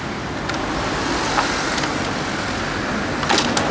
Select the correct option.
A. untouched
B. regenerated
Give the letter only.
A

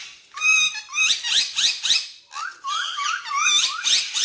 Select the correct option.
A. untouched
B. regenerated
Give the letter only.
B